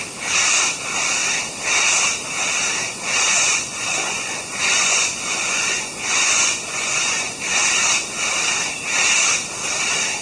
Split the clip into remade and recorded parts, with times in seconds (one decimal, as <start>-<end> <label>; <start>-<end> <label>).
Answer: 0.0-2.8 recorded; 2.8-7.4 remade; 7.4-10.2 recorded